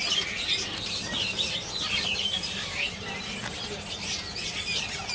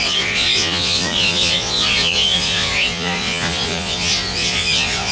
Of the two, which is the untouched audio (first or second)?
first